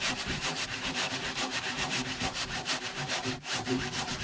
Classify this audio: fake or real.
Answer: fake